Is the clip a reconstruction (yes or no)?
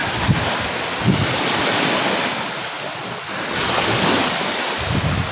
no